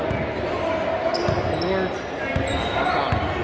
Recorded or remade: recorded